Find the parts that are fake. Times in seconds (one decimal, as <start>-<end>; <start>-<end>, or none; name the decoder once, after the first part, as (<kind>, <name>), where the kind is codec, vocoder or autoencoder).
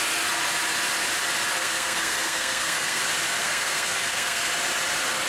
1.6-3.0 (codec, SNAC); 3.4-4.5